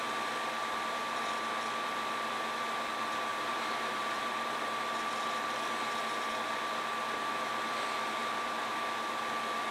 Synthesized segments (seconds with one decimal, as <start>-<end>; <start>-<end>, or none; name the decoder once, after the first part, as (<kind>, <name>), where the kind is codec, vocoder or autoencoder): 3.3-4.6 (vocoder, BigVGAN v2); 8.2-8.8